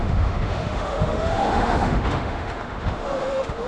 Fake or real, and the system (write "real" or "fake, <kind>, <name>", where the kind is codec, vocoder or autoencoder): fake, autoencoder, DAC-VAE